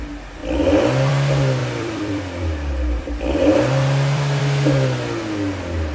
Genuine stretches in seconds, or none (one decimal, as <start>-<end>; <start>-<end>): 0.0-1.6; 4.4-5.9